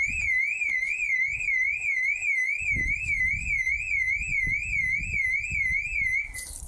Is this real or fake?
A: real